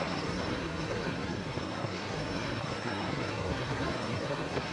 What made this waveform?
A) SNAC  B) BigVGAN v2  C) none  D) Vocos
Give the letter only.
A